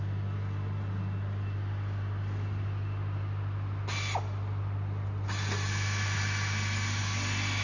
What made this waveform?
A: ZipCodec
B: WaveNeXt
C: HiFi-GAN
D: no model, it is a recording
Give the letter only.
D